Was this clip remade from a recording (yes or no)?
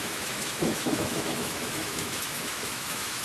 yes